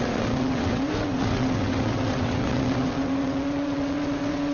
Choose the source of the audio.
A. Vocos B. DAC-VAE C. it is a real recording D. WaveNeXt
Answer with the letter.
D